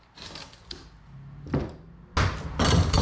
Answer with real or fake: real